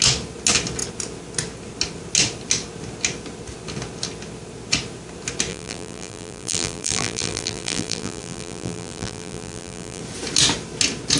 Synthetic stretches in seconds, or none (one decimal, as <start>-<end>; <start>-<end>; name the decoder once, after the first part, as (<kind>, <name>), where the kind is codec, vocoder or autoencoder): 5.5-10.0 (vocoder, BigVGAN v2)